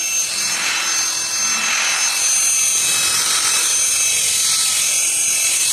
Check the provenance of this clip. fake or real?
real